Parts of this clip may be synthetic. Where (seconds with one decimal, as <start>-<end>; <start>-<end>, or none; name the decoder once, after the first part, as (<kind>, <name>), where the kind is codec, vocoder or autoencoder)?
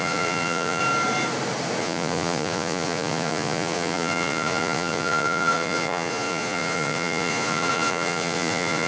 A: 0.0-0.8 (vocoder, Vocos); 1.8-8.9